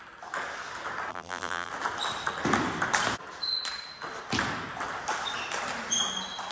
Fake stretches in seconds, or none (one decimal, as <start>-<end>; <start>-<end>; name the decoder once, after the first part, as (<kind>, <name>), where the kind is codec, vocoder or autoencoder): 1.1-1.7 (vocoder, BigVGAN v2)